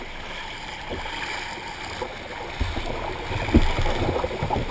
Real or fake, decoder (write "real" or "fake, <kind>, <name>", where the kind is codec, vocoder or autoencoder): real